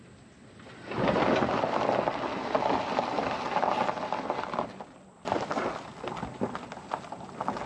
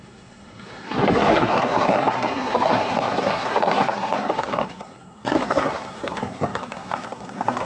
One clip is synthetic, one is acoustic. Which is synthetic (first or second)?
second